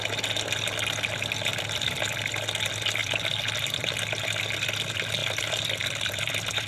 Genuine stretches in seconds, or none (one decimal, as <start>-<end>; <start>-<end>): 0.0-1.5; 2.0-3.0; 4.4-5.2; 6.3-6.7